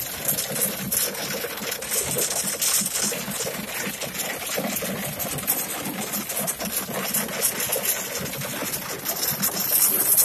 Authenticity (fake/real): real